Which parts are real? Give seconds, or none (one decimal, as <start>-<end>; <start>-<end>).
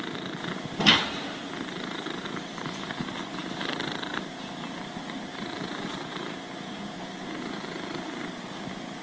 0.0-9.0